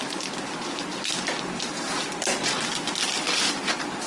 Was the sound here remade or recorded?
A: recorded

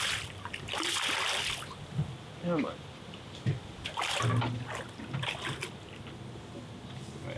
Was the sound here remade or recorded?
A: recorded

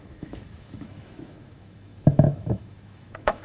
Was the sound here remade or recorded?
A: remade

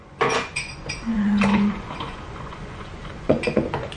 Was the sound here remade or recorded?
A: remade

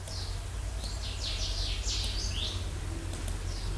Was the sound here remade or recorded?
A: recorded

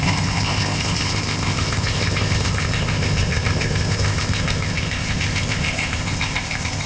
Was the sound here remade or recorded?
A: remade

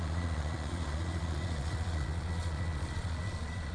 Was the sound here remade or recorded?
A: remade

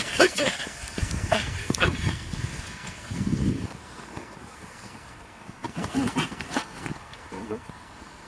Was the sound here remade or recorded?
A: remade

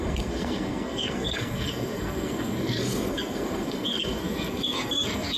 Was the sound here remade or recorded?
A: remade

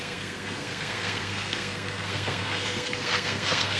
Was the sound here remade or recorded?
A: remade